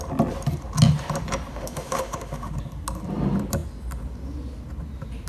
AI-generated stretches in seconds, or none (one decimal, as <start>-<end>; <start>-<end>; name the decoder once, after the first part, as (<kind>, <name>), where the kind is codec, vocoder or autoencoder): 1.5-2.5 (autoencoder, DAC-VAE)